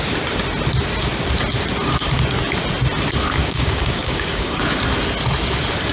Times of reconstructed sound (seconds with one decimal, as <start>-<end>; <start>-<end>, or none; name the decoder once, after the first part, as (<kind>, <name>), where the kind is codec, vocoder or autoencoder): 3.4-4.6 (codec, DAC)